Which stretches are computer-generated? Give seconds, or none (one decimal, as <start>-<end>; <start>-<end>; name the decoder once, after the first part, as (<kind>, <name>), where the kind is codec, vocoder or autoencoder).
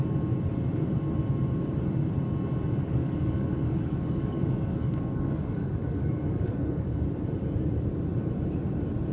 2.8-7.1 (codec, DAC)